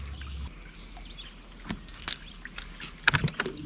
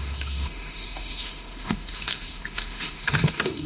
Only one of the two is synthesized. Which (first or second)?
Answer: second